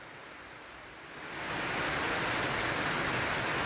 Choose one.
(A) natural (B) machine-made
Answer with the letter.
A